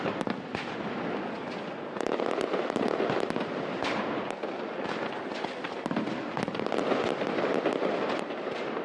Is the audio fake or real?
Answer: real